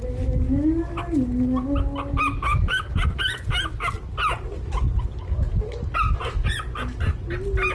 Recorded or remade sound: recorded